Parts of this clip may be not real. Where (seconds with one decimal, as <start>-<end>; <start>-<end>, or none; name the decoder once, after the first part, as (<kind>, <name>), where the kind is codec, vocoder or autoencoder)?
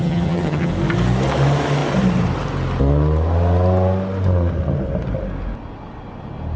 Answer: 0.0-0.7 (vocoder, HiFi-GAN)